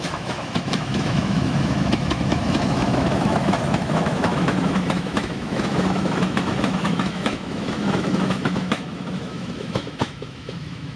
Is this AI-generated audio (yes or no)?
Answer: yes